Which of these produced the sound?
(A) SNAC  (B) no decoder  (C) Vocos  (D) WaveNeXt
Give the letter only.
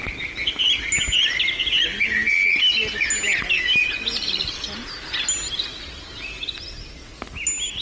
B